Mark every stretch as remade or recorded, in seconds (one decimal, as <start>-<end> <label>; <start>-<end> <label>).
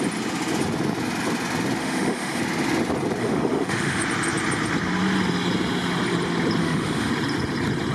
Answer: 0.0-1.8 recorded; 1.8-2.4 remade; 2.4-3.2 recorded; 3.2-4.0 remade; 4.0-6.6 recorded; 6.6-7.1 remade; 7.1-7.9 recorded